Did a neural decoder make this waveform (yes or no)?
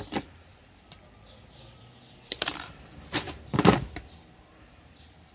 yes